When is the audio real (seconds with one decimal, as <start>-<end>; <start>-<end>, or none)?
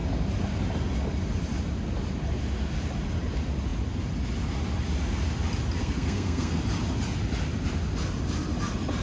0.0-5.8; 6.6-9.0